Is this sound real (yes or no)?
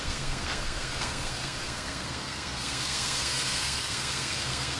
no